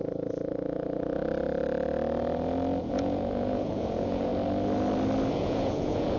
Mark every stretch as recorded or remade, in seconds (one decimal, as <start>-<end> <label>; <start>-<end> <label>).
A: 0.0-1.2 remade; 1.2-2.8 recorded; 2.8-4.3 remade; 4.3-5.3 recorded; 5.3-6.2 remade